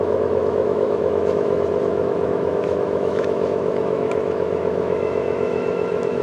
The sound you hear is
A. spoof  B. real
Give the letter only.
A